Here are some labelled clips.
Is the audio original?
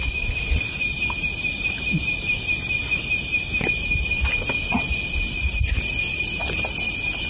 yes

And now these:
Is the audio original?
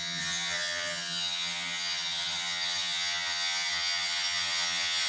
no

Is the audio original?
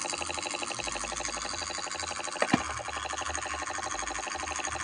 yes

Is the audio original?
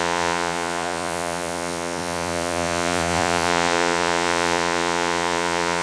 no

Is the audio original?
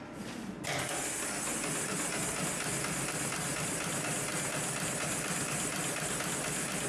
yes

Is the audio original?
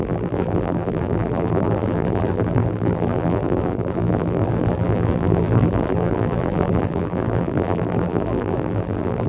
no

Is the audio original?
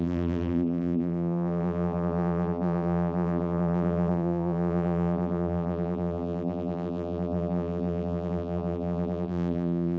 no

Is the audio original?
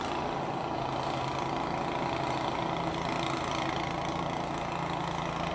yes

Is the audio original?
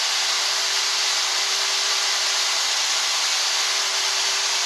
yes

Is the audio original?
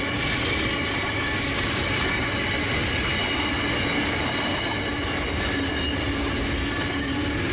yes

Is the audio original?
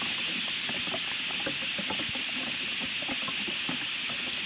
yes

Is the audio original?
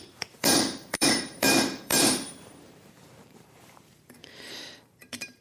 no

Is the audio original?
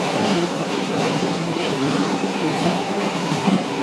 no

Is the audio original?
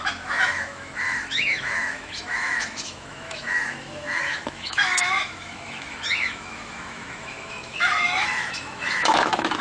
no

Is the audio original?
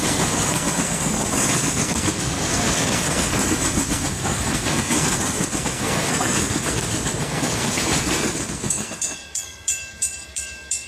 no